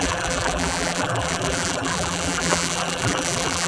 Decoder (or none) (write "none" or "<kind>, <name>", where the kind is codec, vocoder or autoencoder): vocoder, BigVGAN v2